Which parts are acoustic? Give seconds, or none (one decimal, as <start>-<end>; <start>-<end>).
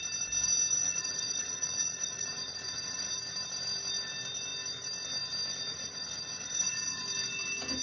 0.0-0.8; 3.1-5.7; 7.0-7.8